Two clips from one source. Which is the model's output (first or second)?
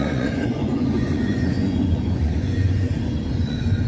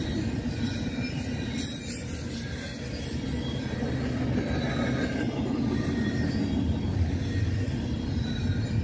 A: first